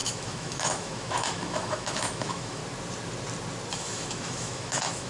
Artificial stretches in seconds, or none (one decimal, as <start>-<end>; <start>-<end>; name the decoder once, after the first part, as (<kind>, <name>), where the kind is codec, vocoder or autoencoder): 0.0-2.6 (autoencoder, DAC-VAE); 3.7-5.1